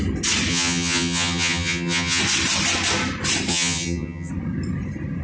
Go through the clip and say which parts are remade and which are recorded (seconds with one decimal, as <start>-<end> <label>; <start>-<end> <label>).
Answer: 0.0-0.5 recorded; 0.5-2.2 remade; 2.2-3.5 recorded; 3.5-4.3 remade; 4.3-5.2 recorded